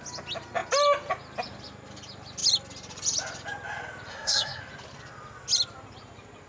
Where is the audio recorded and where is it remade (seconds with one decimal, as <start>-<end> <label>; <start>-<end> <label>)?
0.0-4.1 recorded; 4.1-4.6 remade; 4.6-6.5 recorded